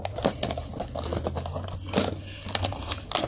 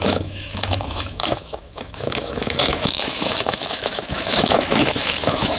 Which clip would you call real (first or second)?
first